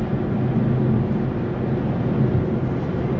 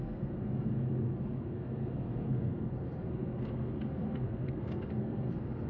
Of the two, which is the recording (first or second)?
first